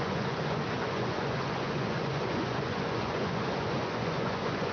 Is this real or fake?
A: fake